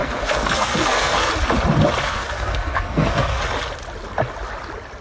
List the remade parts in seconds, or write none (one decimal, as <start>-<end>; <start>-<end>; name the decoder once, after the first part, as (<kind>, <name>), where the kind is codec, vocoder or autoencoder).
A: 0.0-1.3 (codec, SNAC); 2.0-3.4